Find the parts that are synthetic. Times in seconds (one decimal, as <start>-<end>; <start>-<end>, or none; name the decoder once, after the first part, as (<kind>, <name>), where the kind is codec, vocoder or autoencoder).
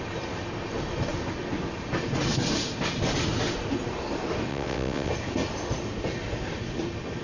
4.5-5.1 (vocoder, WaveNeXt)